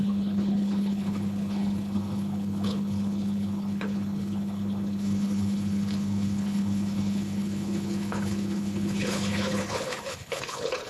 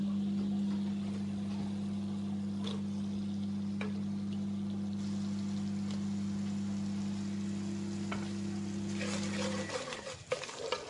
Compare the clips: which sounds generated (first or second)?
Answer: first